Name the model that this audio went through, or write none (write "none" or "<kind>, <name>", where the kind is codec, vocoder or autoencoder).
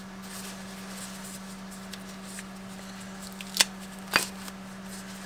none